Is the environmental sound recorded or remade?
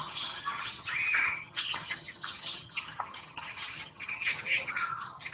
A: remade